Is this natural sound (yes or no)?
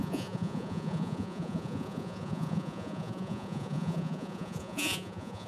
no